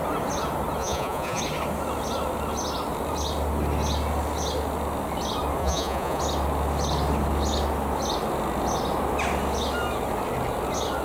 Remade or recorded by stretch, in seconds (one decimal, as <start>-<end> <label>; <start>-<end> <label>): 0.0-0.8 recorded; 0.8-1.4 remade; 1.4-5.6 recorded; 5.6-6.2 remade; 6.2-11.0 recorded